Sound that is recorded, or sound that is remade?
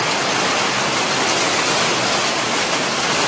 recorded